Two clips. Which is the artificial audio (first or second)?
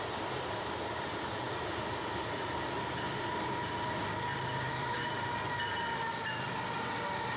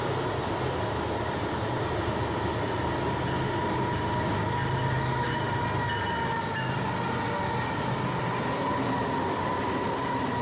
first